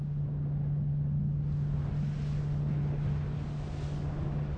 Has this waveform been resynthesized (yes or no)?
no